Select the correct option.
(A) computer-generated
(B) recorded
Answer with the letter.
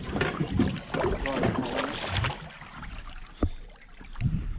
B